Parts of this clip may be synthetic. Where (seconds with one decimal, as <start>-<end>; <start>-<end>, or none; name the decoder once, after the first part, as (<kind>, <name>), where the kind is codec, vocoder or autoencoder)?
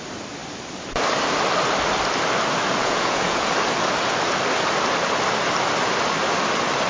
2.8-3.5 (vocoder, Vocos)